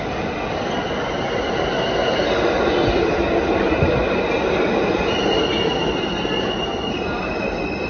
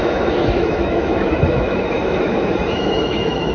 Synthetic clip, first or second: second